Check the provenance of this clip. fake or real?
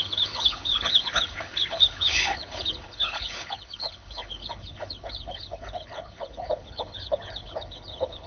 fake